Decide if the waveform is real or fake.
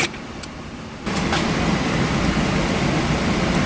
real